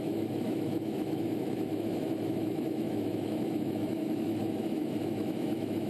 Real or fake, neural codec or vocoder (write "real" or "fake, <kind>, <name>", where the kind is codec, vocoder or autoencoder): fake, autoencoder, DAC-VAE